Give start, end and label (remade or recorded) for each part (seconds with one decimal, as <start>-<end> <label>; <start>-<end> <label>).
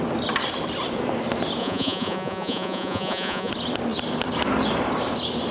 0.0-1.6 recorded; 1.6-3.5 remade; 3.5-5.5 recorded